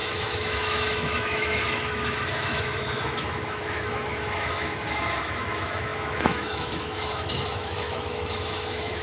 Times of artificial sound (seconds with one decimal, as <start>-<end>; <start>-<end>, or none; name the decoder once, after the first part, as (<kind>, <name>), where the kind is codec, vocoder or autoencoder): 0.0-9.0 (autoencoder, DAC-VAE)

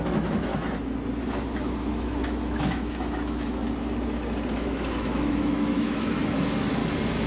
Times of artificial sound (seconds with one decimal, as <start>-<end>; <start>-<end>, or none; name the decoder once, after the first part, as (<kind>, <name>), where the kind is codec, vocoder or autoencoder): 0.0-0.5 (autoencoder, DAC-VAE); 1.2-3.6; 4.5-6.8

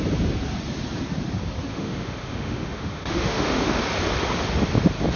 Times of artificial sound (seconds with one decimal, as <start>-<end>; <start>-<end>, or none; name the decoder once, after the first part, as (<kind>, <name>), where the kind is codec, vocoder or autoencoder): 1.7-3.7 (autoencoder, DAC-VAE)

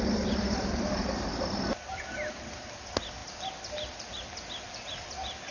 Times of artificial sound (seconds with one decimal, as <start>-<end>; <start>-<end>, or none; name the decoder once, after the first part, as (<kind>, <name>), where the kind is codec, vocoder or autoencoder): none